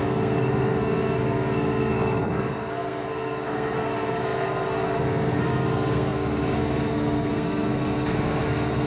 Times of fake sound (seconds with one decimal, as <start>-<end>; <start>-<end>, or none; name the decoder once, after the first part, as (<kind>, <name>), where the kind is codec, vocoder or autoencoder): 0.0-8.9 (codec, SNAC)